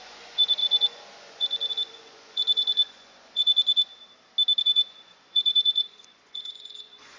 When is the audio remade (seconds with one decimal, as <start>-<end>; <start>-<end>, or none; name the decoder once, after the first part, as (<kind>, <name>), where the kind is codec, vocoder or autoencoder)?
0.0-3.9 (vocoder, Vocos); 4.6-7.2